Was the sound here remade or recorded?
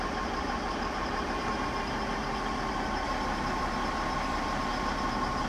recorded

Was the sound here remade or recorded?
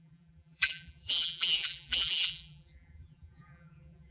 remade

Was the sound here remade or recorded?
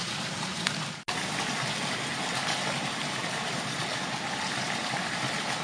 recorded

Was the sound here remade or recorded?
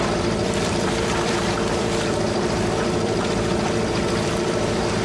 remade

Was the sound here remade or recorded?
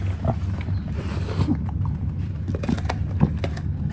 recorded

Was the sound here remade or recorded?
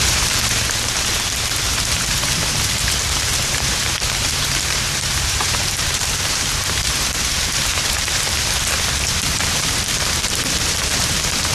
remade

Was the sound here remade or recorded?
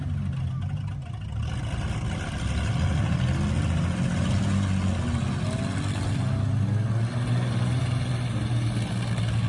recorded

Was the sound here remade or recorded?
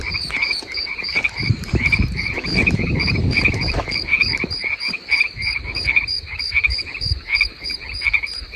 remade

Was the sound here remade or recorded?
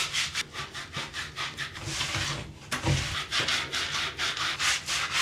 recorded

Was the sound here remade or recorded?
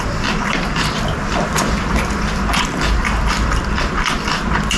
remade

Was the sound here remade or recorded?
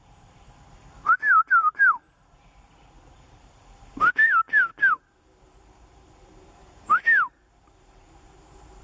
remade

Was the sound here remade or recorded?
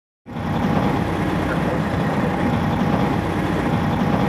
recorded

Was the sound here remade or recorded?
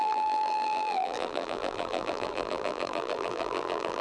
remade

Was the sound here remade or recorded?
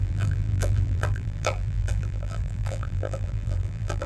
remade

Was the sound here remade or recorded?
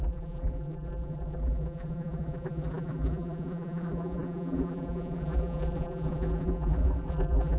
remade